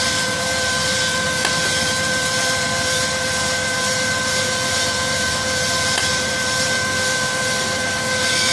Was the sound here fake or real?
real